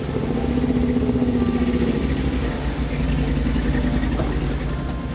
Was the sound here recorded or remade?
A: recorded